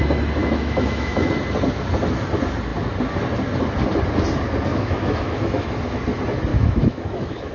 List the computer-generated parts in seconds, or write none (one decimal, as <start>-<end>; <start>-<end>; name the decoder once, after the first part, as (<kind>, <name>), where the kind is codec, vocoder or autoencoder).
0.4-1.3 (autoencoder, DAC-VAE); 4.7-6.0; 6.5-7.5